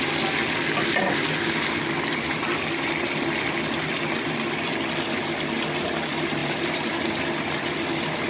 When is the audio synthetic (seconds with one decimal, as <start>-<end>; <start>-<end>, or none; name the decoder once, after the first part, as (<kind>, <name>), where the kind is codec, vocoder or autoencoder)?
6.4-7.4 (vocoder, BigVGAN v2)